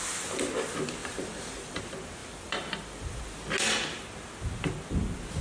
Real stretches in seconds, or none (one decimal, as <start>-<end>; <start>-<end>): 0.0-1.0; 1.8-2.2; 3.2-5.4